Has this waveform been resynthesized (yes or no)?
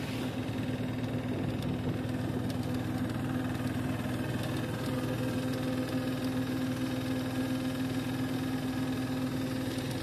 no